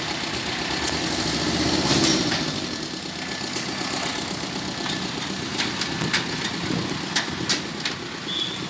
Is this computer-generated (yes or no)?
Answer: no